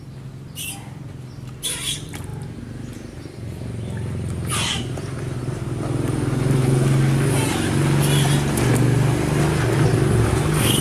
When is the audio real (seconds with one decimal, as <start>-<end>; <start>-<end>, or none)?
0.0-10.8